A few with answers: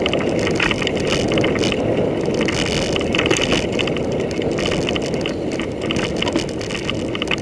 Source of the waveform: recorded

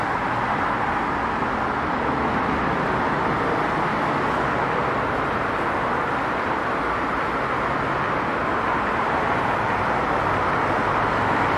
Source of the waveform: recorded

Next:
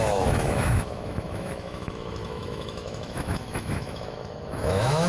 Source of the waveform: remade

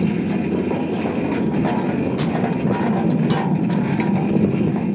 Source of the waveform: recorded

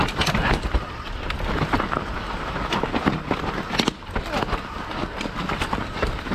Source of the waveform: recorded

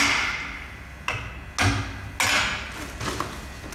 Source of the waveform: recorded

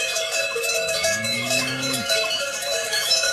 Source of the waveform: remade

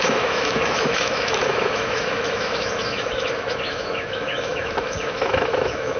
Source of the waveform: remade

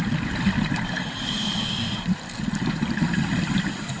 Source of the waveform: recorded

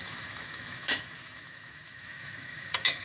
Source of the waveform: remade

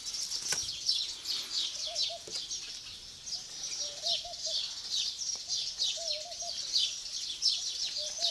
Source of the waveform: recorded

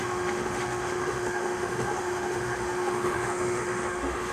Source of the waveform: remade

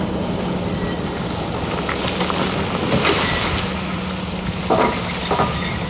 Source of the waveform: recorded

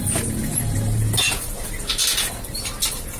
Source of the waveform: recorded